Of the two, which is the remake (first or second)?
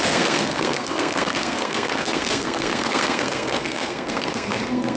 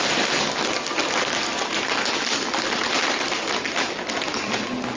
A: first